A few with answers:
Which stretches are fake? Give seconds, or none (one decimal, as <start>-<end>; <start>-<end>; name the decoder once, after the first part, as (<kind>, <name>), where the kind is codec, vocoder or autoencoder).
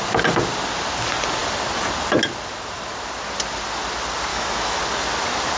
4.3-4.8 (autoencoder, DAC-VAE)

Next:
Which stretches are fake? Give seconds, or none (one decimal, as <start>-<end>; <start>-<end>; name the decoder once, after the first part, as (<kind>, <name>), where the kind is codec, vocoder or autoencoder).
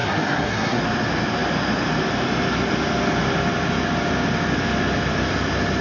0.0-0.8 (codec, SNAC)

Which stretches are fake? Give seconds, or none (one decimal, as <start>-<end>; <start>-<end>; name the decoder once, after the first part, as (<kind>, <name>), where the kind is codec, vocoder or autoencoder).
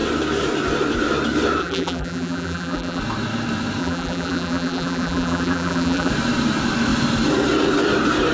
1.6-3.0 (vocoder, BigVGAN v2); 3.8-6.1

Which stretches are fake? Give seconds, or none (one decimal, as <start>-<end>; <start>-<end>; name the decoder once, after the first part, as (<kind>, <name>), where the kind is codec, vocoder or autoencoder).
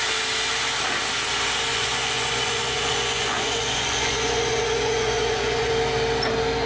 1.7-5.7 (vocoder, Vocos)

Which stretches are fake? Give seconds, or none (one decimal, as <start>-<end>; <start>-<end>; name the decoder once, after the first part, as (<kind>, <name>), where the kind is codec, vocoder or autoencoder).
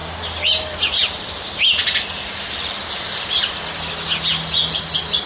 none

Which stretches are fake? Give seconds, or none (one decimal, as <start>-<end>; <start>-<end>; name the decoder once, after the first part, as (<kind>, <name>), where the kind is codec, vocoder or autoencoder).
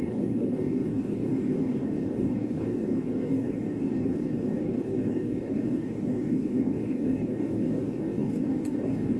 0.0-9.2 (codec, DAC)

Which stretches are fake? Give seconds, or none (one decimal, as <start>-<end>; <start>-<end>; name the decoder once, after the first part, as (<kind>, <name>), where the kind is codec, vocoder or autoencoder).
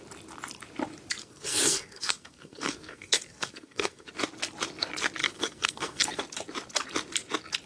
1.2-4.1 (codec, SNAC); 5.2-6.2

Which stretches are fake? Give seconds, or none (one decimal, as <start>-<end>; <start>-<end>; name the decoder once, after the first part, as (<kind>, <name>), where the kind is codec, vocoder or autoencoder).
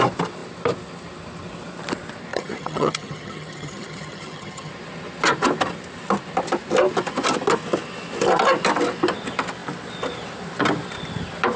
2.3-4.7 (vocoder, HiFi-GAN)